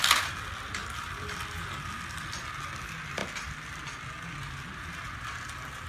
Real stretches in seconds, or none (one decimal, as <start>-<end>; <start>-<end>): 0.0-5.9